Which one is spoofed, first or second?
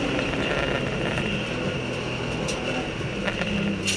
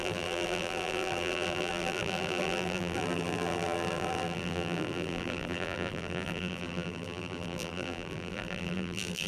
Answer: second